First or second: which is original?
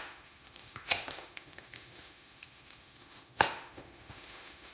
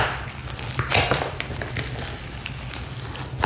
second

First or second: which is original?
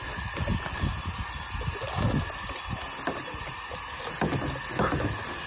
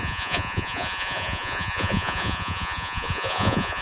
first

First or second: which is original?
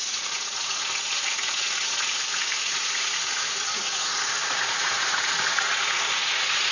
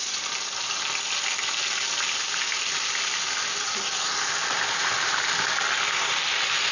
second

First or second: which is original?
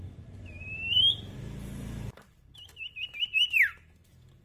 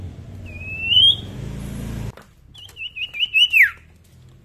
second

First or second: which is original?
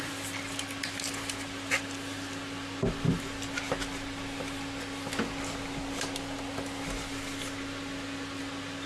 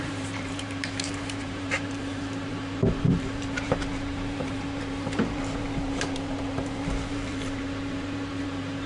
first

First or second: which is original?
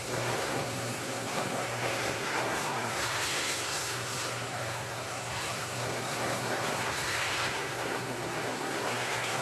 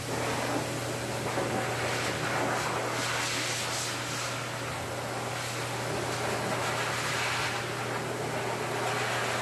second